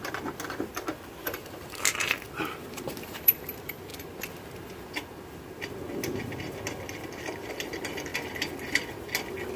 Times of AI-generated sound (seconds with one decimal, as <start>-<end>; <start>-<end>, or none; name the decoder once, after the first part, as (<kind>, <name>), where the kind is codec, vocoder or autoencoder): 0.0-3.9 (vocoder, BigVGAN v2); 7.5-8.1